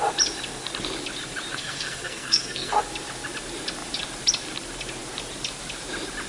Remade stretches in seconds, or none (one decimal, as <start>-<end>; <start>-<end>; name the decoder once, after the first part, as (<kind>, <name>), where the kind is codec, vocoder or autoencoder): 1.5-2.8 (codec, SNAC)